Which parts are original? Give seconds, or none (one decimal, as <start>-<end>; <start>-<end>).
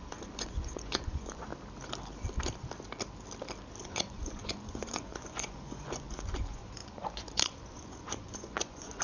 1.5-3.8